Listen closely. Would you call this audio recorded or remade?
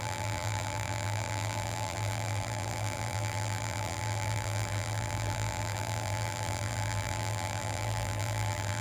remade